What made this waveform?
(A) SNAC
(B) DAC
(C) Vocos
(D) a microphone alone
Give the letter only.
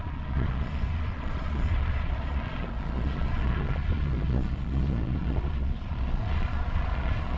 C